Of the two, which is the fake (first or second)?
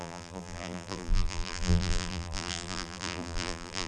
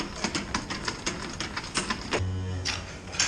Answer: first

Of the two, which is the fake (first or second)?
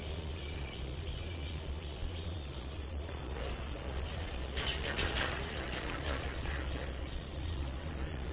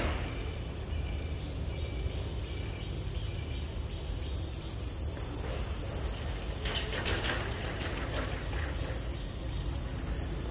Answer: first